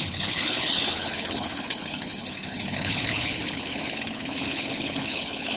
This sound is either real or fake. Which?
fake